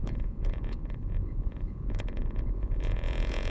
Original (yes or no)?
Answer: no